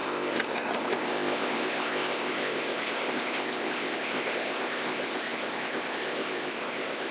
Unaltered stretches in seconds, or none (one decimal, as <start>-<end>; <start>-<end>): none